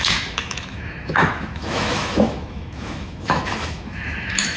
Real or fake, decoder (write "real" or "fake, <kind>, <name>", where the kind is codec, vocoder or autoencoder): fake, autoencoder, DAC-VAE